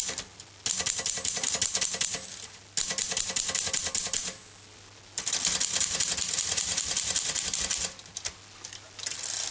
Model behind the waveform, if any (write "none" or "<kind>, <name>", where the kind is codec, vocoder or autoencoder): none